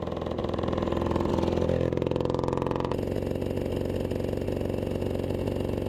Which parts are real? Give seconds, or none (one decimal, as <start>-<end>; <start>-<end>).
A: 0.0-0.4; 1.3-5.9